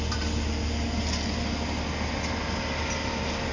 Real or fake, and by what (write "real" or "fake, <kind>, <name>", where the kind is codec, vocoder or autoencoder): real